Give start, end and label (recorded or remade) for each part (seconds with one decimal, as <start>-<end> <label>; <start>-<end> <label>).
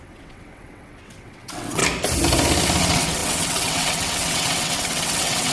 0.0-1.8 remade; 1.8-2.8 recorded; 2.8-5.5 remade